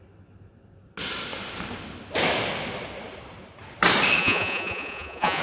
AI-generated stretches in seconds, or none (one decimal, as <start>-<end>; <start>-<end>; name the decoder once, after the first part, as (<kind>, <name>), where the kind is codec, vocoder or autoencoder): 4.2-5.4 (vocoder, Vocos)